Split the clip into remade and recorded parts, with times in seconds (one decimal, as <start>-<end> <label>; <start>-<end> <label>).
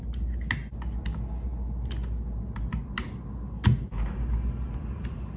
0.0-5.4 recorded